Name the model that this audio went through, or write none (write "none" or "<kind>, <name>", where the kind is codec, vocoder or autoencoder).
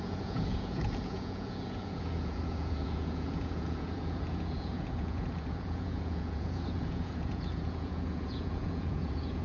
vocoder, Vocos